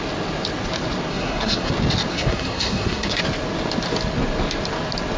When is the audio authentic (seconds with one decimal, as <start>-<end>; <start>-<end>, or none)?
0.0-1.1; 1.7-2.1; 3.2-5.2